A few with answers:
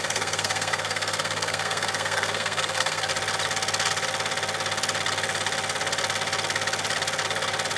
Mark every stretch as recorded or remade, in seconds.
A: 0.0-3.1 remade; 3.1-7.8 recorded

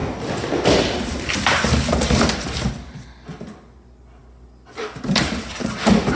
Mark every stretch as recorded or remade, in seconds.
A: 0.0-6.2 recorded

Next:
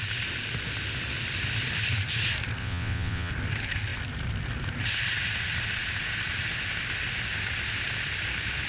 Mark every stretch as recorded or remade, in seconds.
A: 0.0-2.6 recorded; 2.6-3.3 remade; 3.3-8.7 recorded

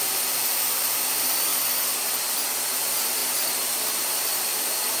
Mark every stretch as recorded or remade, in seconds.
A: 0.0-1.5 remade; 1.5-2.7 recorded; 2.7-5.0 remade

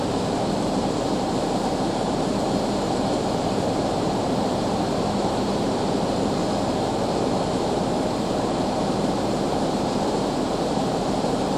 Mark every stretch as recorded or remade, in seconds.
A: 0.0-6.4 remade; 6.4-7.1 recorded; 7.1-11.6 remade

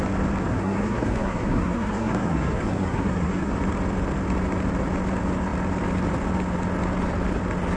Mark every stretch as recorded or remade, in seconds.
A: 0.0-0.5 recorded; 0.5-3.5 remade; 3.5-7.8 recorded